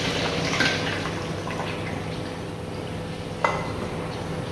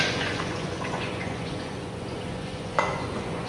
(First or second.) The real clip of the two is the first